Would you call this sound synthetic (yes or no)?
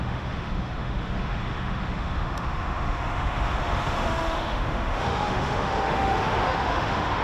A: yes